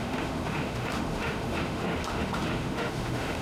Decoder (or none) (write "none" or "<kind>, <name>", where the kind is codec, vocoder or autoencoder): autoencoder, DAC-VAE